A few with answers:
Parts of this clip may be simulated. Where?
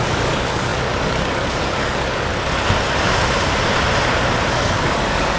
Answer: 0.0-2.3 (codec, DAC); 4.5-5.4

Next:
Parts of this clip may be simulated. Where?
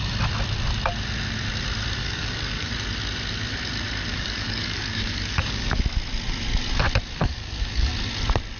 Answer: 2.0-2.7 (codec, DAC); 4.1-5.8; 7.2-7.9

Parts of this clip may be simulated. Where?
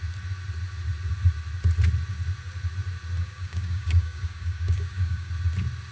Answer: 3.2-5.3 (codec, DAC)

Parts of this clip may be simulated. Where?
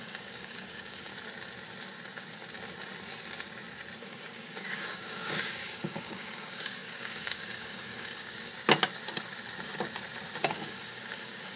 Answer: 0.0-1.1 (codec, DAC); 4.0-8.5; 10.5-11.6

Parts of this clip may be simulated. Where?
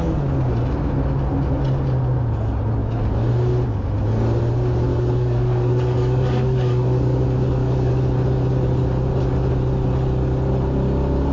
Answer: 2.8-3.3 (codec, DAC); 4.9-7.9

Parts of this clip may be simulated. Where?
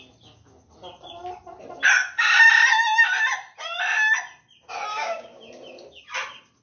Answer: 4.9-5.4 (codec, DAC)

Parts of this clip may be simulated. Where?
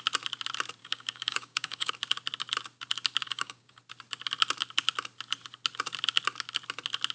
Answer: 0.8-1.9 (codec, DAC); 3.2-3.8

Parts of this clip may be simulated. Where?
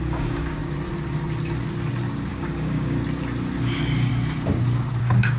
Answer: 0.0-0.6 (codec, DAC); 2.3-3.0; 3.6-4.1; 5.0-5.4